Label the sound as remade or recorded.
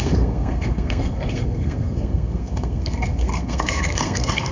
remade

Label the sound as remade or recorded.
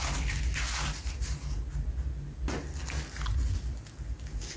recorded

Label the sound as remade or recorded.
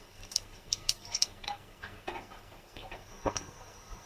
remade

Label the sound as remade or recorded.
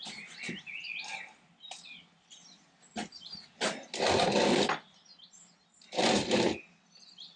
recorded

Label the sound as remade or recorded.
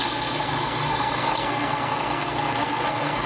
remade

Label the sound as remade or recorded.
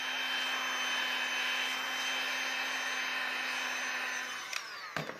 recorded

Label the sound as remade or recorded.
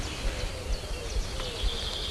recorded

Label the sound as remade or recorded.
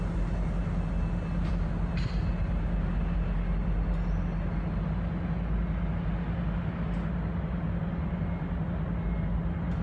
recorded